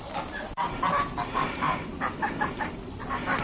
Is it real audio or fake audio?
real